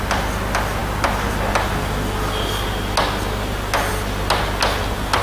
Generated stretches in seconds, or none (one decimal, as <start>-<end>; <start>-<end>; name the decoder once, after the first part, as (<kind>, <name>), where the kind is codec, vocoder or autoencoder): none